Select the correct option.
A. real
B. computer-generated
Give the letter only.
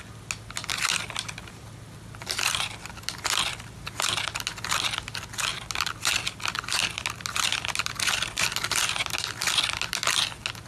A